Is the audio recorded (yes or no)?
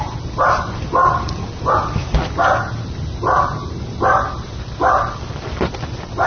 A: yes